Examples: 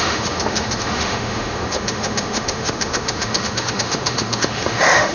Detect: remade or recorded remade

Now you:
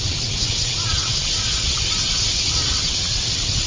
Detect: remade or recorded remade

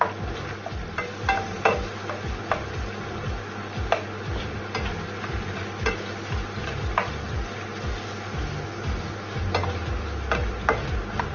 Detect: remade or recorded recorded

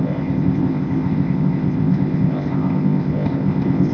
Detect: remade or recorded remade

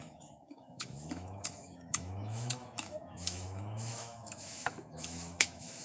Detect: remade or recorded remade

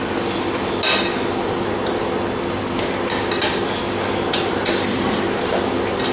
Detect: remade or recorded recorded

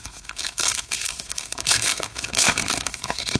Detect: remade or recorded remade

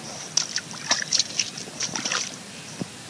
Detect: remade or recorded recorded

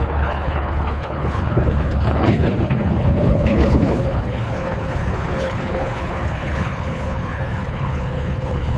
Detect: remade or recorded remade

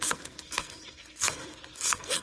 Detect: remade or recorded remade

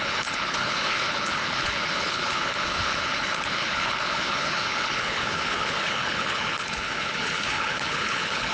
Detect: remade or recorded remade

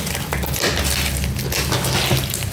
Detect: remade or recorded recorded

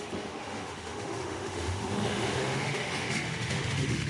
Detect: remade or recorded remade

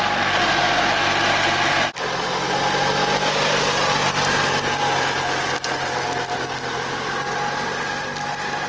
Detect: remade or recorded recorded